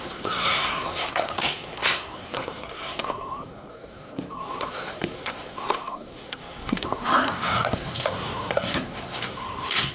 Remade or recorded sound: remade